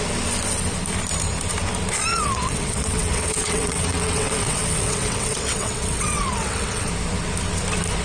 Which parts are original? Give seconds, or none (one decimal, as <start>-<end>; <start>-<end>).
0.0-2.1; 6.9-8.0